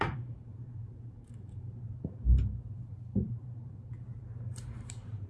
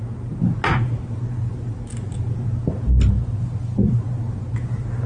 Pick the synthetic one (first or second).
first